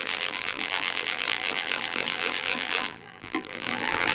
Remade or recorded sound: remade